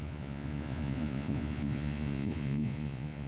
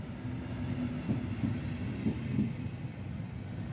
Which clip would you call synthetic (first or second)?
first